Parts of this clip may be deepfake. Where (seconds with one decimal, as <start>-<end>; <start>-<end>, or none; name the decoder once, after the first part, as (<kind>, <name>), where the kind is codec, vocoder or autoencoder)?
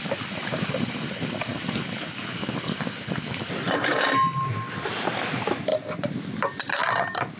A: none